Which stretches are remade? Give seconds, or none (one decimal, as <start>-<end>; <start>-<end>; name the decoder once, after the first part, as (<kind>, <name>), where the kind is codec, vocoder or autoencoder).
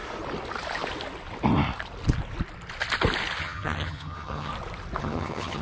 3.4-4.5 (vocoder, HiFi-GAN); 5.0-5.6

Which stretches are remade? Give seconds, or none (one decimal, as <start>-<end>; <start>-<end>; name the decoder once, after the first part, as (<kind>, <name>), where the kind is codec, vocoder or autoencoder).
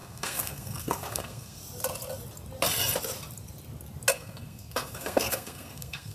0.0-1.6 (codec, SNAC); 4.1-6.1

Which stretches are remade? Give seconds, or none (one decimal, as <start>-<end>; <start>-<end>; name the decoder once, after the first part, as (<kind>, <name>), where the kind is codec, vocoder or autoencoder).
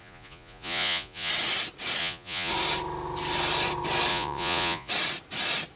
0.0-1.3 (vocoder, Vocos); 2.0-2.5; 4.1-4.9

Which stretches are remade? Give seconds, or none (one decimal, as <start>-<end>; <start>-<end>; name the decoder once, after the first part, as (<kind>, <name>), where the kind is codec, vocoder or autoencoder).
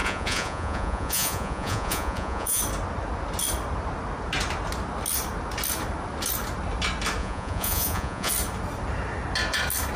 0.0-2.6 (vocoder, Vocos); 7.2-8.3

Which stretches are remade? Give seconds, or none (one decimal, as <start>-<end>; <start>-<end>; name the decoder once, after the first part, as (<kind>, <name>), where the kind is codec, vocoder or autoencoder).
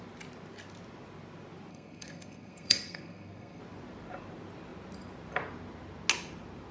1.7-3.6 (codec, SNAC)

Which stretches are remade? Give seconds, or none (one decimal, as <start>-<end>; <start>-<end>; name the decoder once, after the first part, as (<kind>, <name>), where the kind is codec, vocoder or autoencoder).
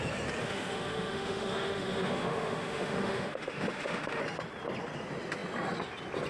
0.4-4.2 (autoencoder, DAC-VAE)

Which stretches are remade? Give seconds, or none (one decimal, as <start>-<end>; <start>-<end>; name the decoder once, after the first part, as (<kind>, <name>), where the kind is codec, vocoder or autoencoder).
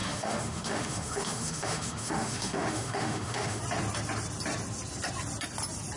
0.0-3.6 (autoencoder, DAC-VAE)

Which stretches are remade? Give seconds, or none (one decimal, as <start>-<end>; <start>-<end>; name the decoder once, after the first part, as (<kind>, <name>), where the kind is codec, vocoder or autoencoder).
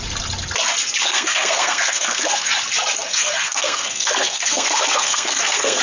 1.0-2.5 (codec, SNAC); 3.1-5.8